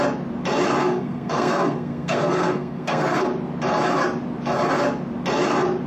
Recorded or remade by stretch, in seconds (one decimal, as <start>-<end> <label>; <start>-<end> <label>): 0.0-0.8 recorded; 0.8-3.2 remade; 3.2-5.9 recorded